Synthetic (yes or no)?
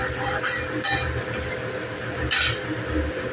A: no